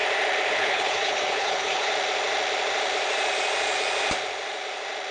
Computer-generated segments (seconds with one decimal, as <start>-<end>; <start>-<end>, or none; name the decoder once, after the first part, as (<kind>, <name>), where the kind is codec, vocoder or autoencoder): 0.5-1.9 (codec, HILCodec)